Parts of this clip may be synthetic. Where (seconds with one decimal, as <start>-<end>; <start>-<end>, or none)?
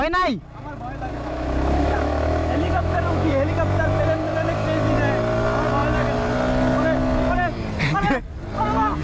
1.1-3.5